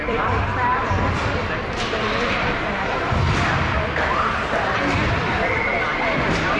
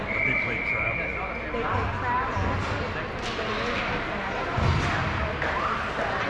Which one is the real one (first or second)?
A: second